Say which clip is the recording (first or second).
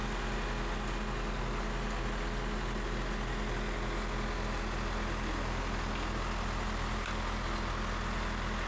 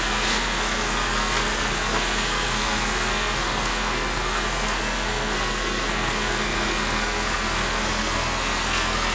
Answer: first